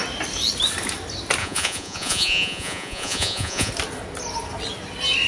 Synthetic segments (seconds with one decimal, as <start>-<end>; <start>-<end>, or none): 1.4-3.7